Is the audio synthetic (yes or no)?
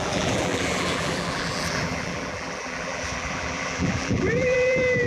yes